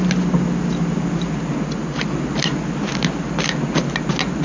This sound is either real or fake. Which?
real